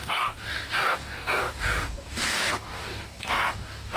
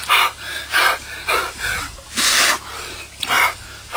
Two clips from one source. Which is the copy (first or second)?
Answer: first